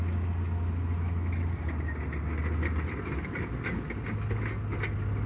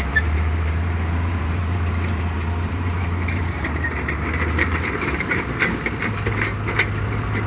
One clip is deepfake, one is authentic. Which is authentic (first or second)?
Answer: first